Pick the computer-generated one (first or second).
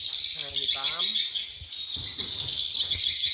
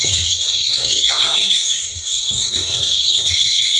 second